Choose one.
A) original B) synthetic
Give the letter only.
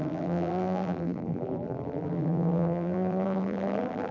B